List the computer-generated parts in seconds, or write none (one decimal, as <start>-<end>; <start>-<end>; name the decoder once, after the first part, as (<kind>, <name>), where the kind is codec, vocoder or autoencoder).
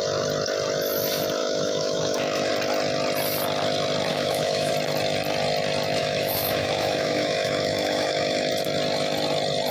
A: 1.4-2.5 (autoencoder, DAC-VAE); 4.1-4.7; 6.0-8.5